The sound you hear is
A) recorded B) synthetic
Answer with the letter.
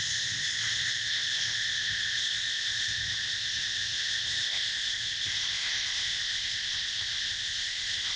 B